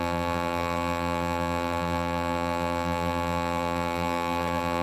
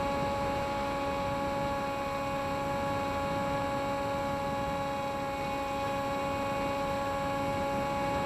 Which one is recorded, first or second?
second